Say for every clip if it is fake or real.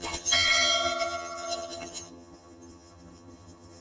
fake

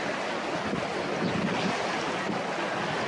real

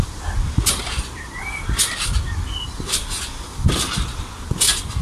real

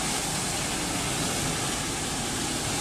real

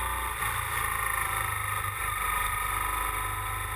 fake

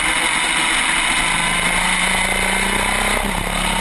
real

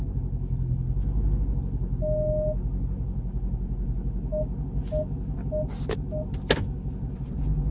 real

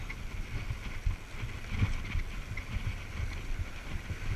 real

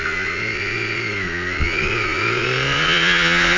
fake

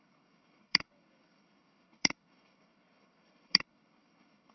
fake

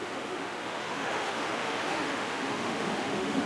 fake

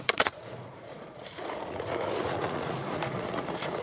fake